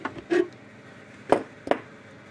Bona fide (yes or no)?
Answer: yes